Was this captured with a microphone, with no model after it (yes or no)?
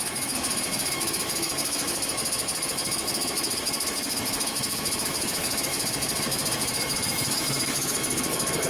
no